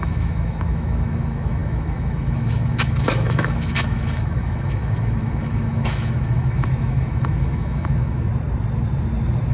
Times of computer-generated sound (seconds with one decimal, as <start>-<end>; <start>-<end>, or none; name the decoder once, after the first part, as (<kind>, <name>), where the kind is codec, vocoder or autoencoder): 0.0-8.3 (autoencoder, DAC-VAE)

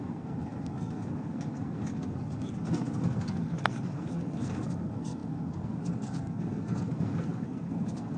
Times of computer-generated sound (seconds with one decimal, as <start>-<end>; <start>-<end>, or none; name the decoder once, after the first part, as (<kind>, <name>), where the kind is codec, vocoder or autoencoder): 0.0-8.2 (codec, SNAC)

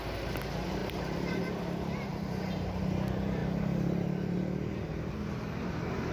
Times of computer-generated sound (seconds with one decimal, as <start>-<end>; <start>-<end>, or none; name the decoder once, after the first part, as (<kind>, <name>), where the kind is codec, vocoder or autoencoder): 0.8-1.4 (vocoder, BigVGAN v2); 2.1-2.8; 3.4-6.1

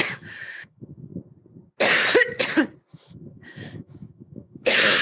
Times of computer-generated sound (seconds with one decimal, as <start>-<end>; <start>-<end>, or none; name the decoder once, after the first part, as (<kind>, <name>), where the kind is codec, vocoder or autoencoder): 0.0-1.1 (autoencoder, DAC-VAE); 2.9-5.0

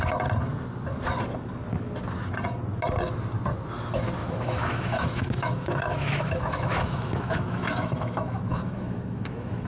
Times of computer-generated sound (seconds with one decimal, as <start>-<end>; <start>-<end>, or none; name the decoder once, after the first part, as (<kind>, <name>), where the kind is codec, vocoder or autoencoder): 4.2-9.7 (autoencoder, DAC-VAE)

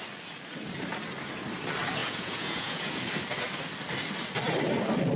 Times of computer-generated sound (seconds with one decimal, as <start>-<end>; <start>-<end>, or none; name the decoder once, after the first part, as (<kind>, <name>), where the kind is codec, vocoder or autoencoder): 2.0-3.0 (vocoder, Vocos)

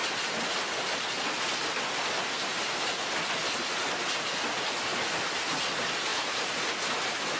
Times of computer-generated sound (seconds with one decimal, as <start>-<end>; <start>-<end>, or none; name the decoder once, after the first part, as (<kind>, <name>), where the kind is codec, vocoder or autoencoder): 6.1-6.7 (vocoder, BigVGAN v2)

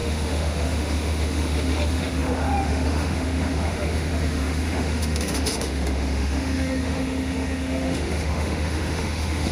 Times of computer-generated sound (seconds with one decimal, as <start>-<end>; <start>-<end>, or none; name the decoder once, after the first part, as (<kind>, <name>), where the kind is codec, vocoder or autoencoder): 0.0-9.5 (autoencoder, DAC-VAE)